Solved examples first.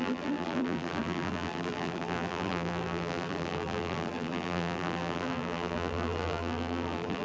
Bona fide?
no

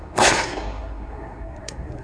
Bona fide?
no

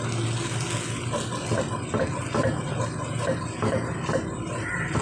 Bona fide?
yes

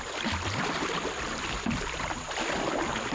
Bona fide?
yes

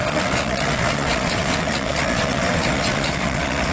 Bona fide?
no